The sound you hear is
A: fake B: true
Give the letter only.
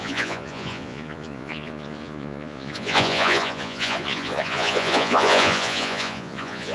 A